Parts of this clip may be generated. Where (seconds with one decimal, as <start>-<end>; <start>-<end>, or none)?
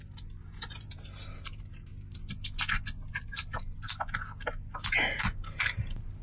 0.0-1.9; 3.1-6.2